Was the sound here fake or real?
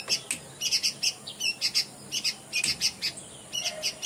real